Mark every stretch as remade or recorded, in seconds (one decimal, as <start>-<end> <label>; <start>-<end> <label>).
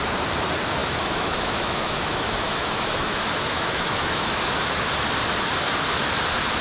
0.0-0.8 recorded; 0.8-4.8 remade; 4.8-6.6 recorded